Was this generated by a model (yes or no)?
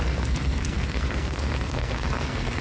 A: yes